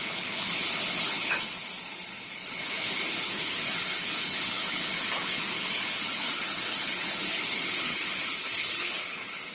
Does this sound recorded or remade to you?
remade